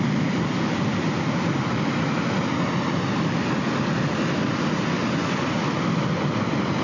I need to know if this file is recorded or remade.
recorded